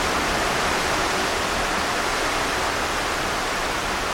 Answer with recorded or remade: recorded